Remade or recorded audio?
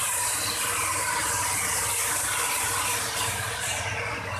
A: recorded